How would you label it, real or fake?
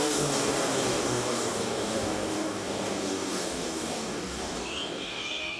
fake